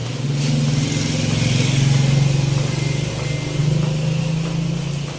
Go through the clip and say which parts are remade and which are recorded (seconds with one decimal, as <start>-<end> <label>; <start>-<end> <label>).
0.0-5.2 recorded